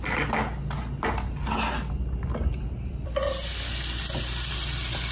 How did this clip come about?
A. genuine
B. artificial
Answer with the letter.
A